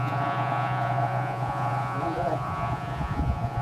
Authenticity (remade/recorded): remade